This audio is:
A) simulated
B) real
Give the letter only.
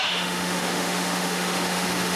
A